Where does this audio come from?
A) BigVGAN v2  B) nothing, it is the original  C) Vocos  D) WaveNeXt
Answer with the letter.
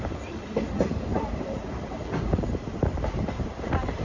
A